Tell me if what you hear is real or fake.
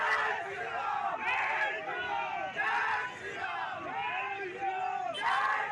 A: real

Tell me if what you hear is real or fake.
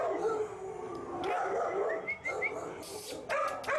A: real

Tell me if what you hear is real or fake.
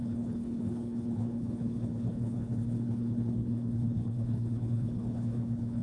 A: fake